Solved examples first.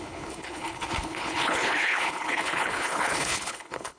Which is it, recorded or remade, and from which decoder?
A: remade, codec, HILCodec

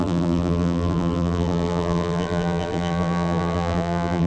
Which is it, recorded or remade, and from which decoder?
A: remade, vocoder, BigVGAN v2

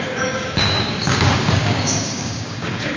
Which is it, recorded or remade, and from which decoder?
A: remade, codec, DAC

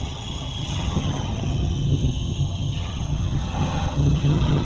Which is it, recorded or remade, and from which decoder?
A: remade, vocoder, HiFi-GAN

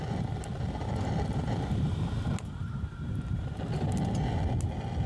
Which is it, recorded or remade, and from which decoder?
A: recorded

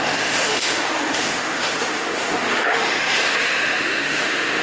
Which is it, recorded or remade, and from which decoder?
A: remade, autoencoder, DAC-VAE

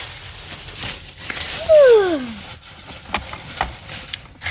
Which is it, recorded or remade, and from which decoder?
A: recorded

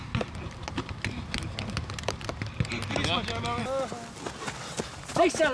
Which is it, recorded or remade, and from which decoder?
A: recorded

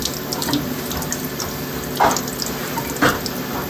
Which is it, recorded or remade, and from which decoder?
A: recorded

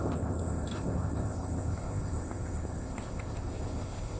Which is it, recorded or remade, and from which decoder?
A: remade, codec, ZipCodec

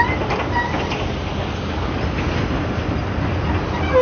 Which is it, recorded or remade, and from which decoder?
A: recorded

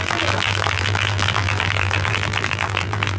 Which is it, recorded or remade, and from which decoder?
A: remade, vocoder, BigVGAN v2